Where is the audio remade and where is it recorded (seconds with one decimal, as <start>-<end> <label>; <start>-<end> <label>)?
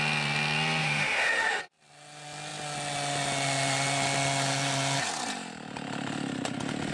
0.0-0.8 recorded; 0.8-1.6 remade; 1.6-6.9 recorded